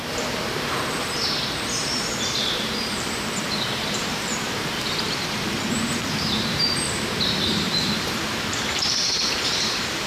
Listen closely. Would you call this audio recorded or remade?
remade